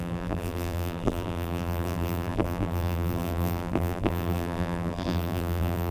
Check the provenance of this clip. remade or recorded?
remade